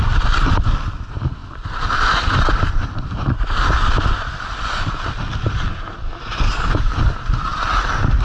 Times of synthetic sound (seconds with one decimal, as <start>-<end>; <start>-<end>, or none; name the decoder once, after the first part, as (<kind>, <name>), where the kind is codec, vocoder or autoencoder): none